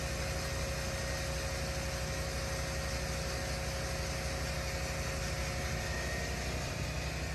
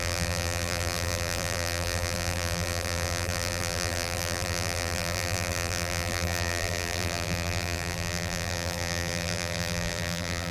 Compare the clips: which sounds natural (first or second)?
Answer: first